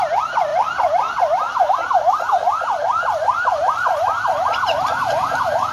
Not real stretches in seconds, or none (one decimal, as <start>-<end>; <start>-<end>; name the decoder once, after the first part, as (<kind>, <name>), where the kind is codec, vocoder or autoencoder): 3.3-4.3 (vocoder, BigVGAN v2)